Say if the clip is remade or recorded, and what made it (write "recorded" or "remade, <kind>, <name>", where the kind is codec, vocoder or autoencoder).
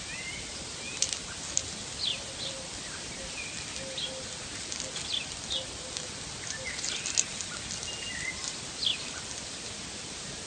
recorded